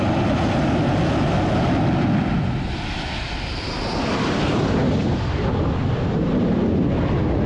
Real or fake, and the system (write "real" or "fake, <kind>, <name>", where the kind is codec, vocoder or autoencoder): real